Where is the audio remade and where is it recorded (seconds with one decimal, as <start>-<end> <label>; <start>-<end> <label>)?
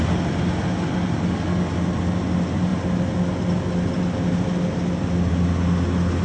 0.0-6.2 recorded